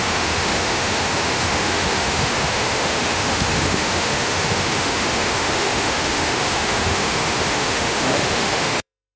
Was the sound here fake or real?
fake